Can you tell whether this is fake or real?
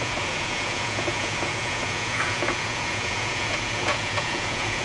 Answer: fake